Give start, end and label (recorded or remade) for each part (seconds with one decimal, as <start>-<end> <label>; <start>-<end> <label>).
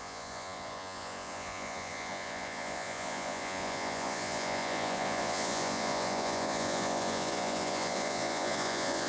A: 0.0-9.1 remade